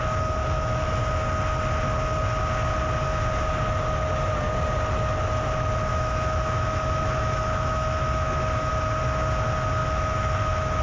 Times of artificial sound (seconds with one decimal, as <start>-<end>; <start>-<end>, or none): 0.4-1.0; 5.9-8.7; 9.8-10.8